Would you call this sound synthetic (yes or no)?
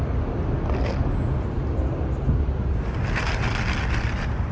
no